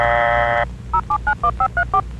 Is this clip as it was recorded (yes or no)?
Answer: yes